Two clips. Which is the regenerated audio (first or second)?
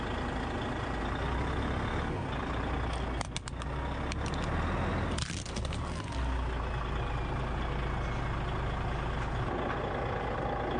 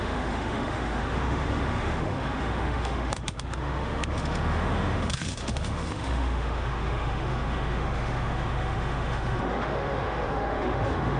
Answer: second